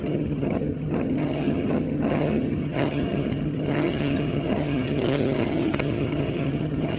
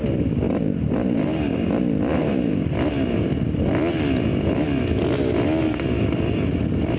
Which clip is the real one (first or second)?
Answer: second